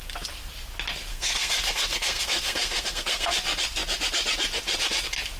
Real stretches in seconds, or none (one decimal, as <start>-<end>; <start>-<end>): 0.0-1.1; 3.3-5.4